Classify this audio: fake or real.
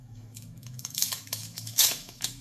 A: fake